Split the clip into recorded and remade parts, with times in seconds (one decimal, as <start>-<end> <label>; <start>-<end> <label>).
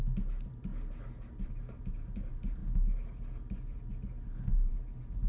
0.0-0.7 remade; 0.7-1.4 recorded; 1.4-2.6 remade; 2.6-3.9 recorded; 3.9-5.3 remade